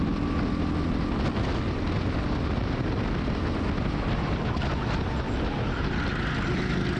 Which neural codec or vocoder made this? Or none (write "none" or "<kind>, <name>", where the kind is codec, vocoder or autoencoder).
none